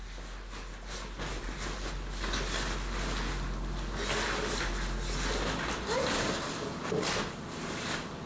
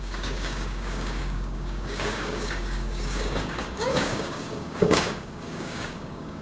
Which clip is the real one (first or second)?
first